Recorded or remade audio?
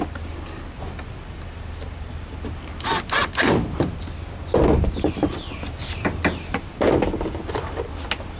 recorded